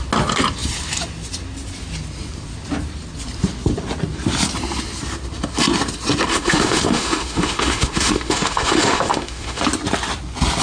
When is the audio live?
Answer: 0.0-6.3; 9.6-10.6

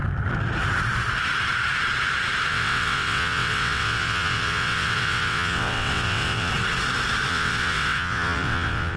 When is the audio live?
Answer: 0.0-2.5; 6.5-7.3

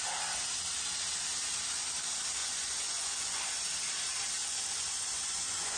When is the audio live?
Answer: 0.0-2.4; 3.4-4.4

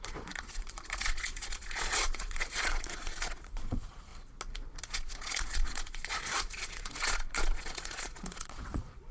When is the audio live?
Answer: 4.1-4.8

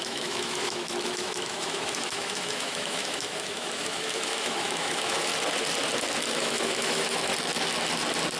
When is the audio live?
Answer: 5.3-6.3; 7.3-8.4